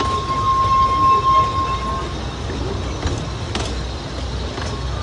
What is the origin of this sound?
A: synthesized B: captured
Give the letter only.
B